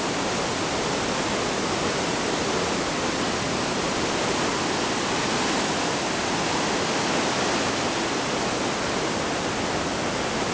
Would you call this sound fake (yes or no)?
no